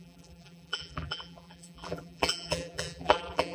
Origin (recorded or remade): remade